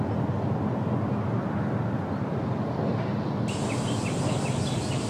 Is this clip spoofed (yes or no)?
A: no